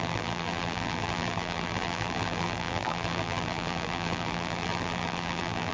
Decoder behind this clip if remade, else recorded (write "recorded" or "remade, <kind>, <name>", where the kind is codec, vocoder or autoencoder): remade, vocoder, BigVGAN v2